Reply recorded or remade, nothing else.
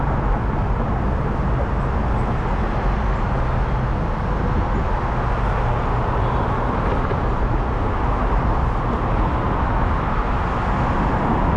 recorded